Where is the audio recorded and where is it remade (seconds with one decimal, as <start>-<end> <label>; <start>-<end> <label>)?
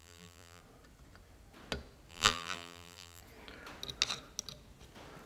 0.0-0.6 remade; 0.6-2.1 recorded; 2.1-3.2 remade; 3.2-5.3 recorded